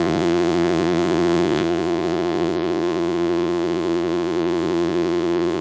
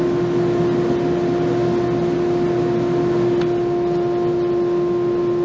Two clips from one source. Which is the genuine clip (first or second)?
second